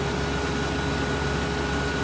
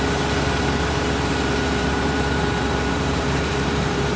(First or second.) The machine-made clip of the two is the second